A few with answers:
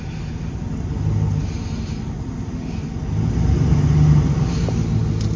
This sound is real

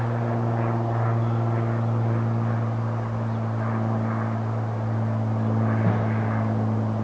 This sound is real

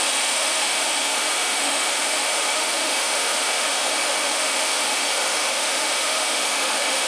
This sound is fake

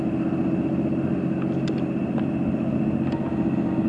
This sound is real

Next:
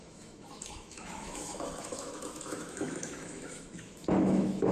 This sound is fake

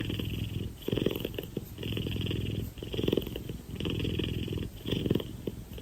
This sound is real